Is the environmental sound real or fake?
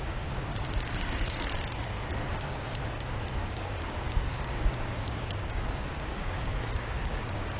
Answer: fake